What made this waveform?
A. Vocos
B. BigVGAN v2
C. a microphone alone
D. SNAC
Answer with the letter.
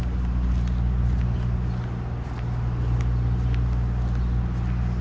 C